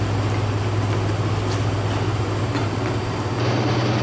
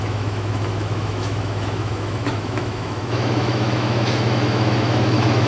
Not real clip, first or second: second